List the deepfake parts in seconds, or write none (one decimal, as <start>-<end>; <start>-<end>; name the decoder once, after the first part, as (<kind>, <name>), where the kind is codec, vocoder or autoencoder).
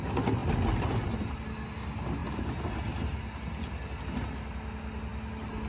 none